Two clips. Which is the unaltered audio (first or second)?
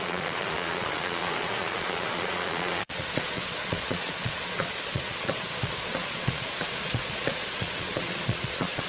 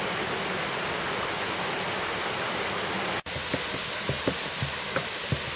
second